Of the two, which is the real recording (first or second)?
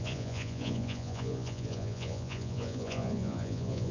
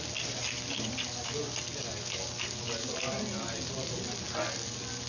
second